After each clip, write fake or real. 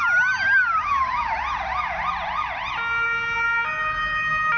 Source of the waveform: real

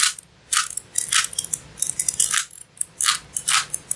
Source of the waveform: real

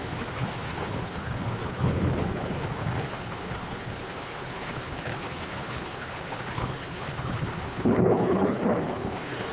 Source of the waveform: fake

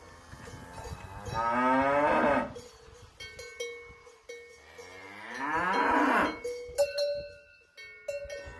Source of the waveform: real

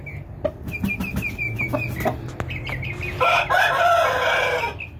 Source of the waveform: real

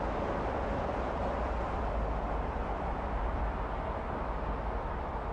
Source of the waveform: real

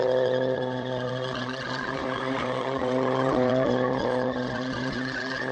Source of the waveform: fake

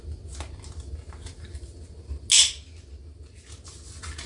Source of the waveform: real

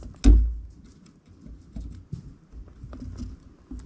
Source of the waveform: real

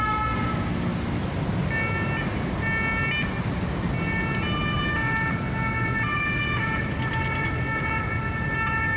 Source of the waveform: real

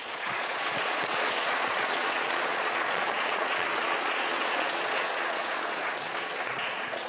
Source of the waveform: fake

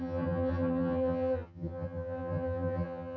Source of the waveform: fake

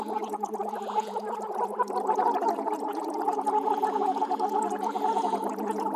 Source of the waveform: fake